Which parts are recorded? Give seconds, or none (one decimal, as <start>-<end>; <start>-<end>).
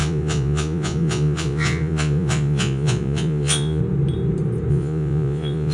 3.8-4.7